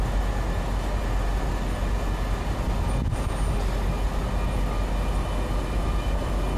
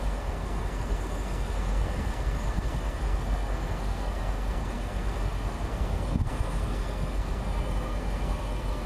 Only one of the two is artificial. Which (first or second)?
second